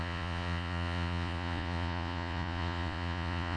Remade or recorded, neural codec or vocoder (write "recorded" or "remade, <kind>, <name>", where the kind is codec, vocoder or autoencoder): remade, vocoder, Vocos